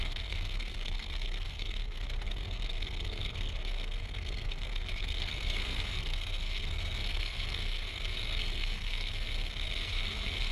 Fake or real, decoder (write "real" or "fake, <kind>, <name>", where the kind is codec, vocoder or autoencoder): fake, codec, SNAC